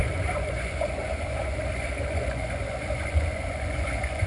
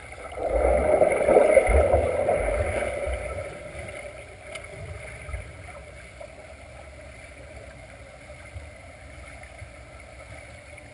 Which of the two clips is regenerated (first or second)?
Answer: first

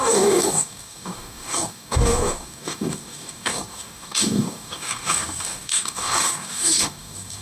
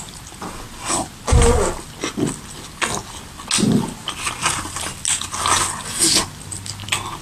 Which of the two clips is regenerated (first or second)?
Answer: first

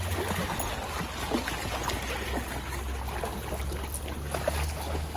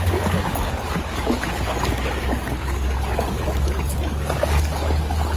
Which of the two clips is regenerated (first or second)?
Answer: second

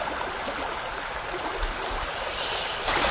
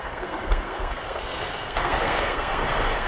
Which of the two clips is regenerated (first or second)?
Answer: second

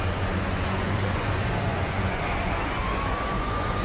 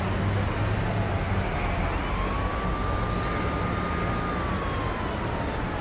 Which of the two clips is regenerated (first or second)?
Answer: first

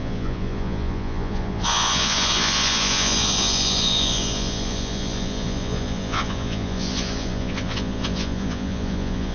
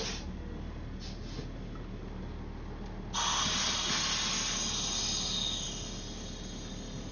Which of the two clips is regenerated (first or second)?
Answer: first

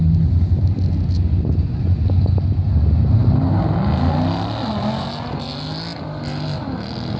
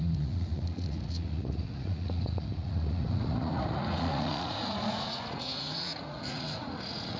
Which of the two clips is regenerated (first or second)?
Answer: second